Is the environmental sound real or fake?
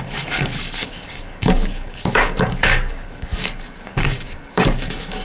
fake